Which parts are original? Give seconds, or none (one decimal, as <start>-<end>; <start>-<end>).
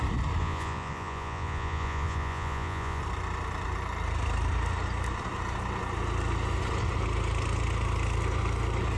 0.0-0.4; 3.0-9.0